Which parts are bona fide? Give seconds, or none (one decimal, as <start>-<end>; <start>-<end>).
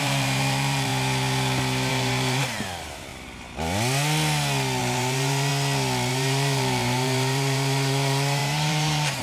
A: 0.9-1.9; 3.1-4.8; 5.5-6.1